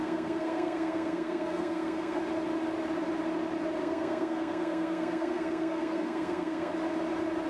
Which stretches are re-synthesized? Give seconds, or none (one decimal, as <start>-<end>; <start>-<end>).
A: 0.0-2.2; 3.8-6.7